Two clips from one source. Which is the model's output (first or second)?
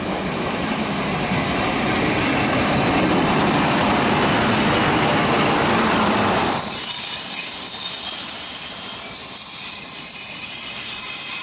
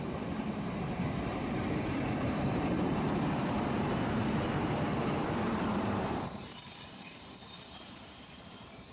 second